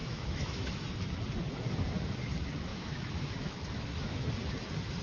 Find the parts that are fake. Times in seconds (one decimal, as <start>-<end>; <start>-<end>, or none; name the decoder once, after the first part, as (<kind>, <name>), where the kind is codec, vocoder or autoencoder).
0.0-0.8 (autoencoder, DAC-VAE); 2.7-4.3